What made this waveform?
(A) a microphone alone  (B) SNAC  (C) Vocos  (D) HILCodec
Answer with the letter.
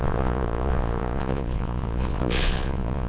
C